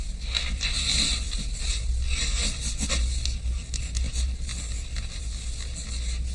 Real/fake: real